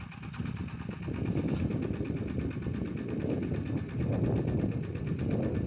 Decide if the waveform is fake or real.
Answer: real